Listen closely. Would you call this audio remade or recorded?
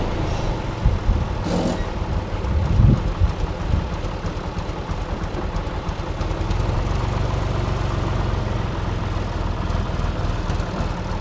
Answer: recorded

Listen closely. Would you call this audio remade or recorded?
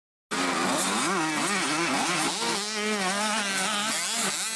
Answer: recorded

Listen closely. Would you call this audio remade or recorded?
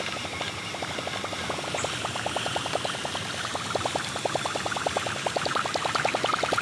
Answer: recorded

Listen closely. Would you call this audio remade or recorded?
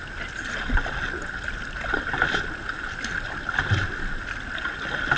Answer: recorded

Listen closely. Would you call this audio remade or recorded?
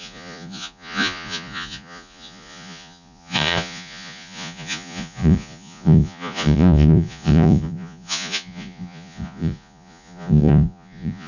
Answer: remade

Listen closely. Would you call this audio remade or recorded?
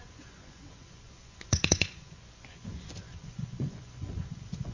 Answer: remade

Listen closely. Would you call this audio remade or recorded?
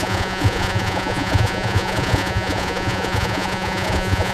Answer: remade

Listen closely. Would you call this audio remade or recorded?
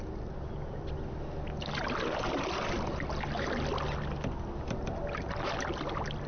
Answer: recorded